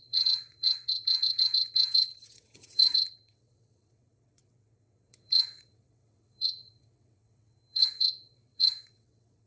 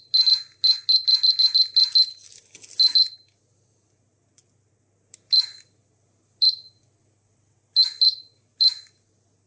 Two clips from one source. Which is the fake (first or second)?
first